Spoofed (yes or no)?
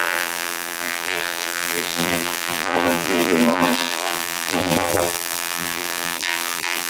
yes